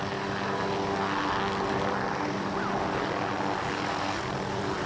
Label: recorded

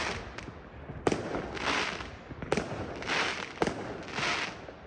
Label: recorded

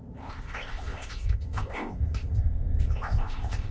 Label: remade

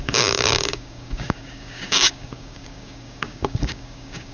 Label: remade